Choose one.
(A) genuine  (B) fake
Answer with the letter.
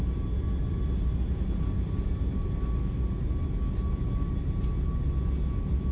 A